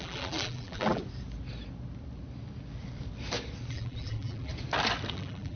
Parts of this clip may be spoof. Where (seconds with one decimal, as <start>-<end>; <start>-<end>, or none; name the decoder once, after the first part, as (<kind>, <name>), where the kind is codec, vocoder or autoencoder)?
0.0-1.0 (vocoder, BigVGAN v2); 3.7-4.5; 5.1-5.6